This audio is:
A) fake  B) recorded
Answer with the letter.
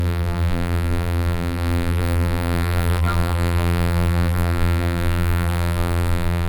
A